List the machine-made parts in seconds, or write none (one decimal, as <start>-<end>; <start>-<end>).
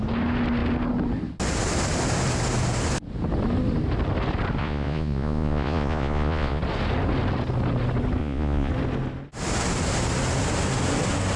4.6-6.6; 8.2-8.7